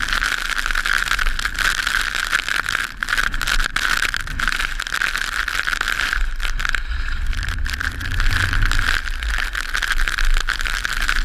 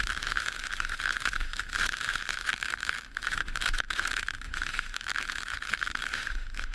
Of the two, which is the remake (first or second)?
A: second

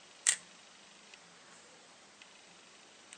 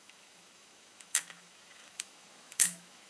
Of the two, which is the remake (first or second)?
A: second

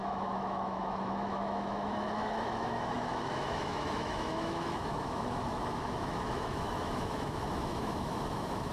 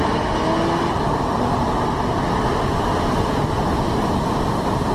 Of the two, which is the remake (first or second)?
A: first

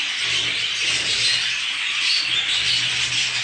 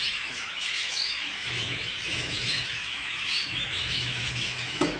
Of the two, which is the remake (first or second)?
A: second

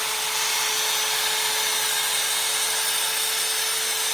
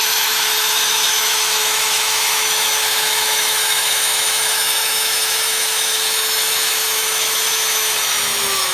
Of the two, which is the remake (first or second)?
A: second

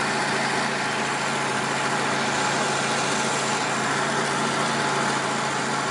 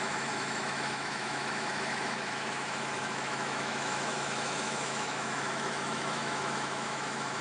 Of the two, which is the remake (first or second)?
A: second